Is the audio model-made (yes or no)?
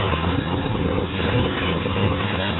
yes